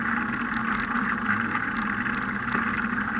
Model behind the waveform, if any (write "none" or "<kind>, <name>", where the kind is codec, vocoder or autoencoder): none